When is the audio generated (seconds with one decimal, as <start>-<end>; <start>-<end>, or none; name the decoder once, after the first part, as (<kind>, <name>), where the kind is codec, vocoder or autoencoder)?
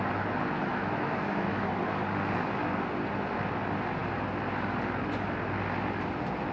0.6-1.7 (autoencoder, DAC-VAE)